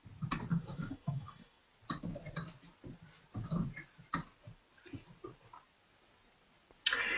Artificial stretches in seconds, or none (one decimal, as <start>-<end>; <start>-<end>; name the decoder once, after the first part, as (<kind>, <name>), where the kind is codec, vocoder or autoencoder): 0.5-1.6 (autoencoder, DAC-VAE)